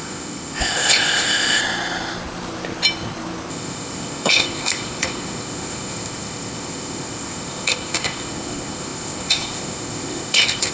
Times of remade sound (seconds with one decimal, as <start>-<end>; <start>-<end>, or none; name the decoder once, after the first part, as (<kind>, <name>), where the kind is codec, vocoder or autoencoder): 0.0-1.6 (codec, ZipCodec); 3.5-10.7